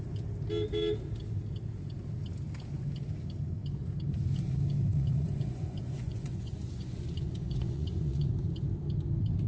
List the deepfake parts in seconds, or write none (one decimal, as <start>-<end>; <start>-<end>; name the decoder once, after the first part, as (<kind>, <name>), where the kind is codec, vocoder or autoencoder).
4.9-8.3 (vocoder, Vocos)